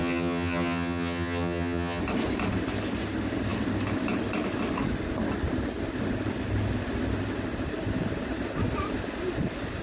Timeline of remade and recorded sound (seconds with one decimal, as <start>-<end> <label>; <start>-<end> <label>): 0.0-2.0 remade; 2.0-9.8 recorded